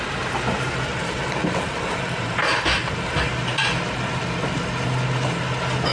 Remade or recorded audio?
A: recorded